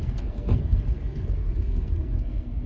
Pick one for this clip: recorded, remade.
remade